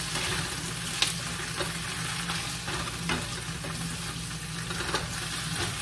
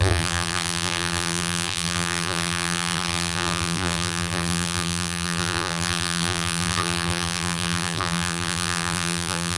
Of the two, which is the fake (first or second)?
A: second